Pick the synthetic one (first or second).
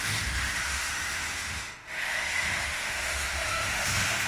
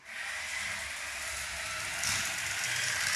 first